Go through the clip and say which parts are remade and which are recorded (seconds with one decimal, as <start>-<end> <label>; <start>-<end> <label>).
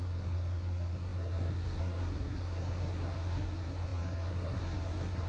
0.0-5.3 remade